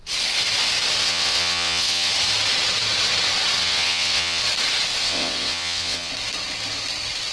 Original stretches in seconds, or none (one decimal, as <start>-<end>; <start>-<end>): 0.0-1.0; 2.1-3.6; 4.4-5.0; 6.1-7.3